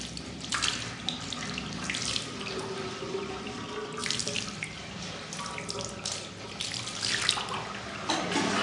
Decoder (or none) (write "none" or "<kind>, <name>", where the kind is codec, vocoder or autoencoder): none